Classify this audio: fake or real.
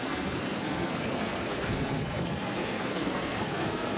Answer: fake